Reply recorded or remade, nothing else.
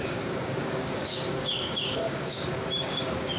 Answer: remade